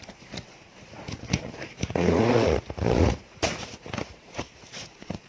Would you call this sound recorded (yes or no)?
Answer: no